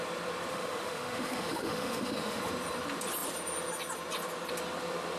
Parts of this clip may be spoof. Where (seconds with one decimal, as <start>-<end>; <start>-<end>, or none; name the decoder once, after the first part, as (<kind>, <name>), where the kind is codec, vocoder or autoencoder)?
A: 0.5-2.4 (autoencoder, DAC-VAE)